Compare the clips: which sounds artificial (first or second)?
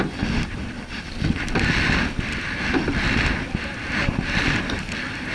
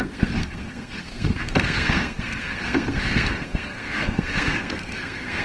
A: second